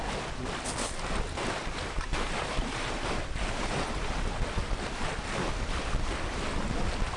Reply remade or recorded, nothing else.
recorded